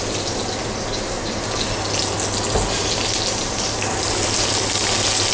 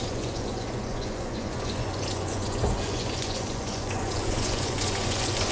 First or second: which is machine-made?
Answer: second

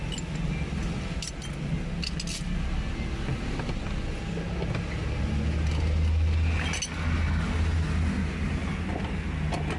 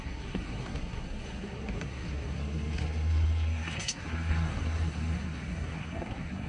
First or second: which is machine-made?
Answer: second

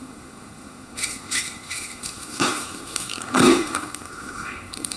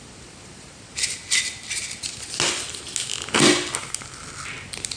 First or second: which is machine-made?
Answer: first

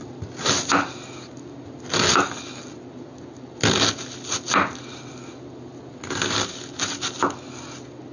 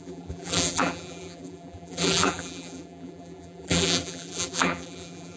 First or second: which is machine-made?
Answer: second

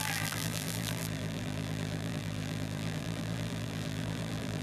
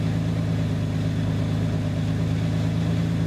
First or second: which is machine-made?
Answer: first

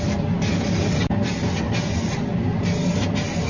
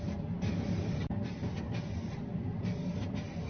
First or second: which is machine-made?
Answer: second